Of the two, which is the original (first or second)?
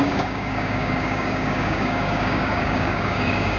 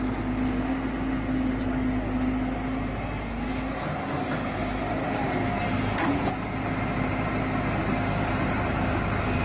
second